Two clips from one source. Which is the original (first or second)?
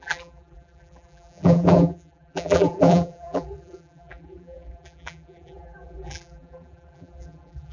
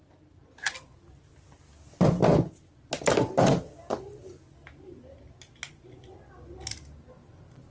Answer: second